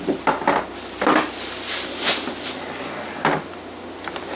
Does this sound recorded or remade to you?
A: recorded